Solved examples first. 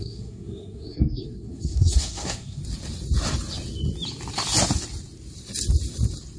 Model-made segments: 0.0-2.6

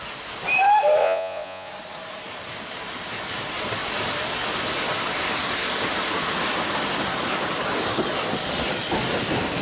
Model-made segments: 1.0-1.7